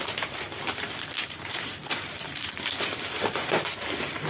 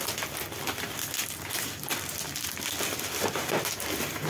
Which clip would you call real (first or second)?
second